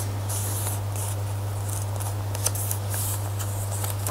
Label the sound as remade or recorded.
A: recorded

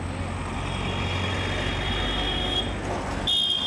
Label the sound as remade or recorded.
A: recorded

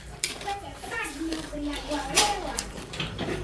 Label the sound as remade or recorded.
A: remade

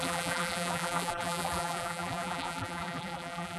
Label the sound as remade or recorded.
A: remade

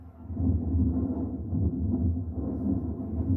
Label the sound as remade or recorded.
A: recorded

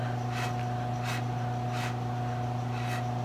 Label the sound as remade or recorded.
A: recorded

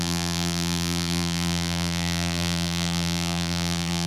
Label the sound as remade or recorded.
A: remade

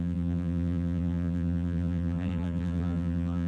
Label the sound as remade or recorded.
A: remade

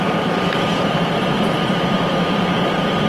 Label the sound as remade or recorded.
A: remade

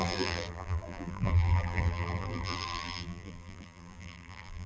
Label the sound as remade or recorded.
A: remade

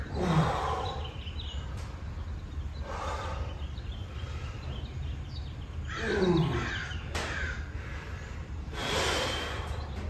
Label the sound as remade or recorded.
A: recorded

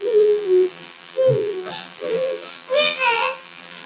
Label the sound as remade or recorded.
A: remade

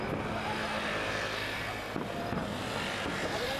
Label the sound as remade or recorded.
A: recorded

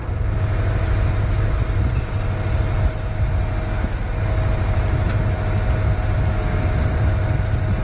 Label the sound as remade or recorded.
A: recorded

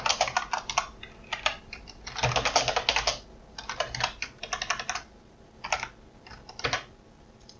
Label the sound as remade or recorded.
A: recorded